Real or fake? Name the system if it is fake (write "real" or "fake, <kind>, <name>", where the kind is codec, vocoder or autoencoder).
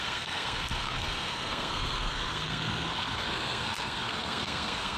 fake, codec, SNAC